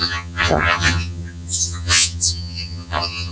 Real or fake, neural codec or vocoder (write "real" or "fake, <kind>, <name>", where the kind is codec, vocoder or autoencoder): fake, vocoder, HiFi-GAN